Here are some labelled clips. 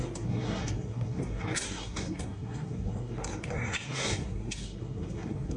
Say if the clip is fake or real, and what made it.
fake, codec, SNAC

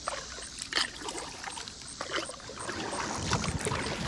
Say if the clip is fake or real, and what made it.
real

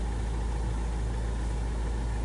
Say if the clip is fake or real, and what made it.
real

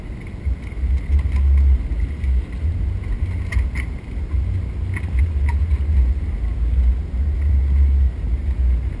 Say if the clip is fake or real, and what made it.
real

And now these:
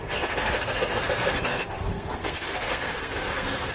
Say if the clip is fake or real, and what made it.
fake, codec, SNAC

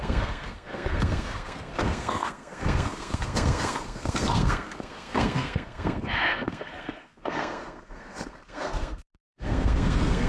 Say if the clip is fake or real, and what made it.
fake, codec, SNAC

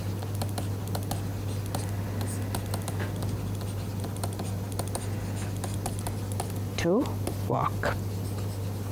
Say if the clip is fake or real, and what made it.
real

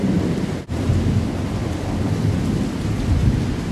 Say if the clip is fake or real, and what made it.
real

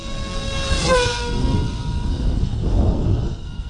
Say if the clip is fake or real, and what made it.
fake, codec, SNAC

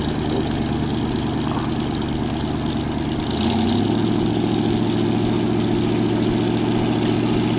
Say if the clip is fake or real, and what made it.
real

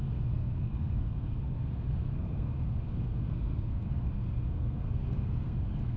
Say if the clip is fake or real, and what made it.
fake, codec, SNAC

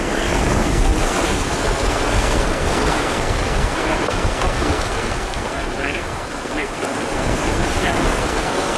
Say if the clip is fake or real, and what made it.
fake, codec, SNAC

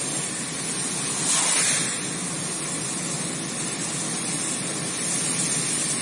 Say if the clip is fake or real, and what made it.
real